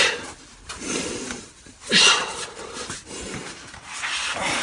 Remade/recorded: recorded